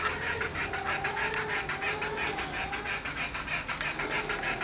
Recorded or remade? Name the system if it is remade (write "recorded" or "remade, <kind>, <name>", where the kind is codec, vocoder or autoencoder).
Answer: recorded